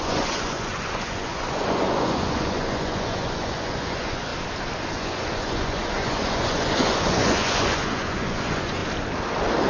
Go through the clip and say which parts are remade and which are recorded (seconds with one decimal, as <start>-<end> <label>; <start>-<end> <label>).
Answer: 0.0-4.3 remade; 4.3-4.9 recorded; 4.9-8.8 remade; 8.8-9.7 recorded